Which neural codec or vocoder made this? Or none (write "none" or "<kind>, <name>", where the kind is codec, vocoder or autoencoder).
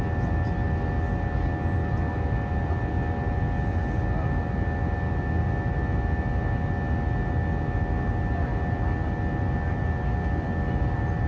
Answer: none